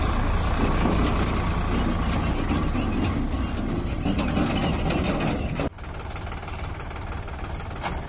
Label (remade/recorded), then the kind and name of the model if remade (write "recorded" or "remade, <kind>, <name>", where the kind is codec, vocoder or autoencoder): recorded